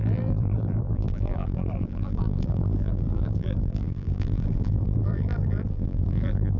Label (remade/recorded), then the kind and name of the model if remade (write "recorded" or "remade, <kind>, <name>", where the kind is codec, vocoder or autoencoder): remade, vocoder, BigVGAN v2